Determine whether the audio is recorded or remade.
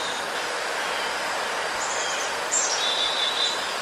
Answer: remade